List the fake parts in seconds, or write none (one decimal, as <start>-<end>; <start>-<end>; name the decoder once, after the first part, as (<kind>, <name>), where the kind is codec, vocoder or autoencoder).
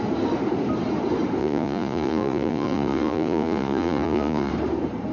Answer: 1.4-4.5 (vocoder, Vocos)